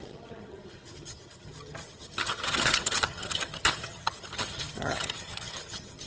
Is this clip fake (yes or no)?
yes